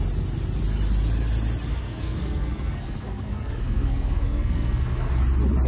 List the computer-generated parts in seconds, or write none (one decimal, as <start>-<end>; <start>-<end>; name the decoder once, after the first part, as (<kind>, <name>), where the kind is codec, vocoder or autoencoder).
1.7-5.1 (codec, SNAC)